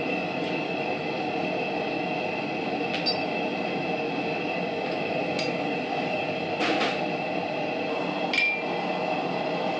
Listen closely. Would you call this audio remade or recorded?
recorded